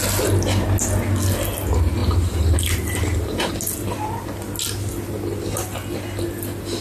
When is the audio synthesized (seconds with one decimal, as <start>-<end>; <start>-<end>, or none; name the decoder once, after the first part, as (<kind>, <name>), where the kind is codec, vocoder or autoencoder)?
2.0-3.5 (vocoder, BigVGAN v2)